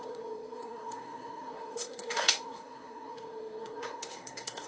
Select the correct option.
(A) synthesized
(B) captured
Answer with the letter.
A